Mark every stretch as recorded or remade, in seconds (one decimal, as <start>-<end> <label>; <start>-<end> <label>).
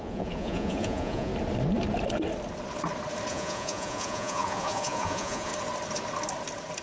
0.0-1.3 remade; 1.3-3.3 recorded; 3.3-5.5 remade; 5.5-6.8 recorded